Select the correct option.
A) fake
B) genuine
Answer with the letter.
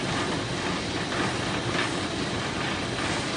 B